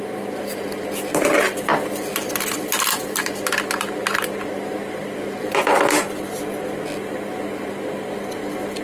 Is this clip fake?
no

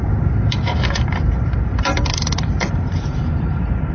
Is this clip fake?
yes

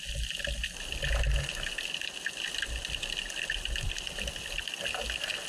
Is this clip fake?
no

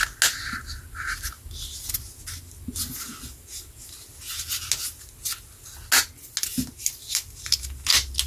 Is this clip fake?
no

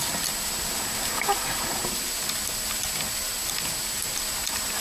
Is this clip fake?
no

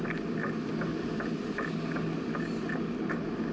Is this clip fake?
no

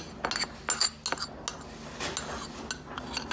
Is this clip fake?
no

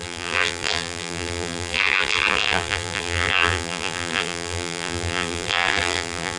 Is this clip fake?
yes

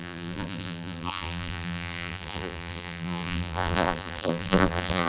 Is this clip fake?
yes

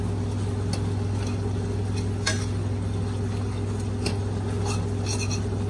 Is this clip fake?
no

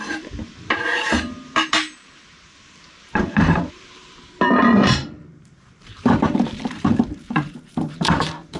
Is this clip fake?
yes